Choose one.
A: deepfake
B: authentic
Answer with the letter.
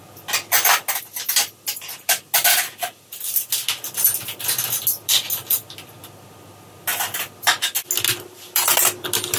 B